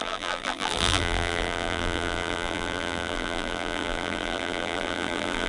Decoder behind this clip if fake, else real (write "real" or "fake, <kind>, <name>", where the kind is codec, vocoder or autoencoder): fake, vocoder, BigVGAN v2